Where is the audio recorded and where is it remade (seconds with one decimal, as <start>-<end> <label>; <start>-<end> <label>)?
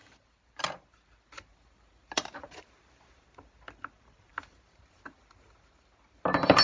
0.0-2.6 remade; 2.6-4.3 recorded; 4.3-5.0 remade; 5.0-6.6 recorded